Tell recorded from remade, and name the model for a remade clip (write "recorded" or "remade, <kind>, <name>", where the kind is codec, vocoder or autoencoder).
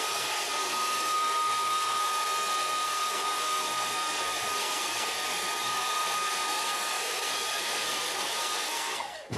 remade, codec, SNAC